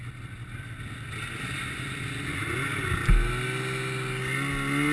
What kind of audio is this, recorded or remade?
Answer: recorded